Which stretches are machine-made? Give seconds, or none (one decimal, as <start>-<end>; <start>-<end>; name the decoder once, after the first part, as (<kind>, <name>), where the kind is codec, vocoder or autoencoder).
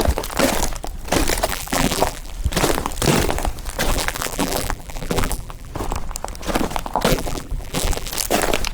1.5-2.3 (vocoder, BigVGAN v2); 3.9-5.7; 7.1-8.1